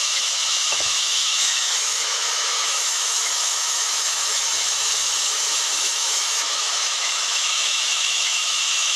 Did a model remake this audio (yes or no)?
yes